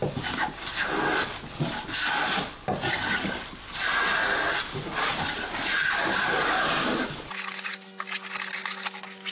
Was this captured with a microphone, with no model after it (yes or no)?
yes